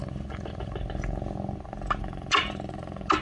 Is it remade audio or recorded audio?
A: recorded